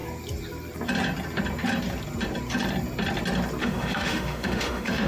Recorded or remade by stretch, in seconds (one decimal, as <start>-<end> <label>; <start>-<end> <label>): 0.0-3.6 recorded; 3.6-5.1 remade